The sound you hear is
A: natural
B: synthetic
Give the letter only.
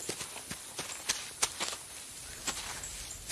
A